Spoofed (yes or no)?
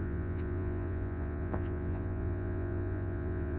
yes